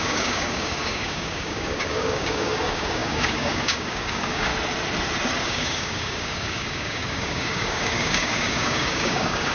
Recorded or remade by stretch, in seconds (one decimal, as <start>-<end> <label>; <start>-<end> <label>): 0.0-4.5 remade; 4.5-5.4 recorded; 5.4-9.5 remade